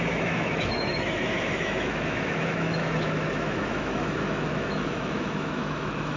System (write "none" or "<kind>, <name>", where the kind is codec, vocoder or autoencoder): autoencoder, DAC-VAE